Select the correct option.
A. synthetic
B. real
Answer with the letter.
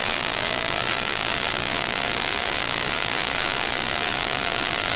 A